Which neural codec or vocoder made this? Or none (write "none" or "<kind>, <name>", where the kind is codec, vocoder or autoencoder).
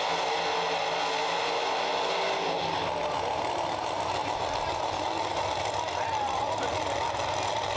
none